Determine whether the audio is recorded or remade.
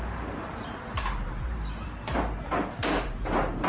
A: remade